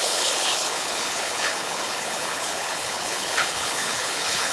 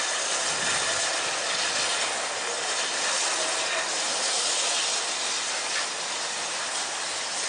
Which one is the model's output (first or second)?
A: first